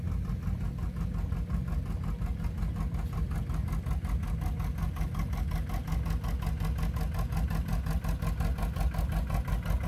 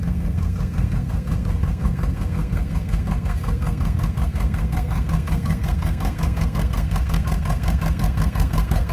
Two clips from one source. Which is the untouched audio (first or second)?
first